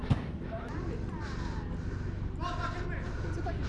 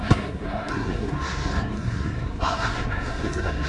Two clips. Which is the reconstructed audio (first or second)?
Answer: second